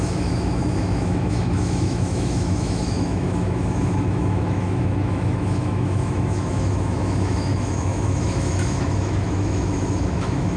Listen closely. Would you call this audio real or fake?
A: fake